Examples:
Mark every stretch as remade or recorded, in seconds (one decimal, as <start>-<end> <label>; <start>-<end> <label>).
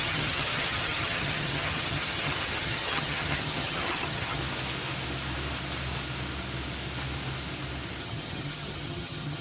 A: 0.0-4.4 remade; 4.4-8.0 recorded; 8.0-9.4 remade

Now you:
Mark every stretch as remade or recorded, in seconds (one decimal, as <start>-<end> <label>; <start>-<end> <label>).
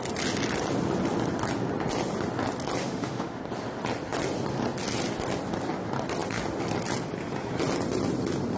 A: 0.0-2.8 recorded; 2.8-3.4 remade; 3.4-8.6 recorded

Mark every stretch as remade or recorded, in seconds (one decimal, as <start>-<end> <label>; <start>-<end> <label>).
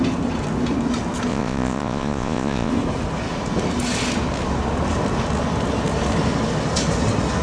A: 0.0-1.3 recorded; 1.3-2.7 remade; 2.7-7.4 recorded